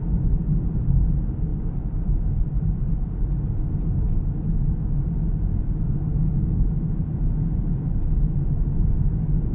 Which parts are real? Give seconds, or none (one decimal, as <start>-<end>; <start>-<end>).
0.0-9.5